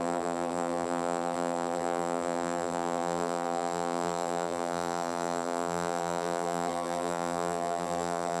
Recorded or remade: remade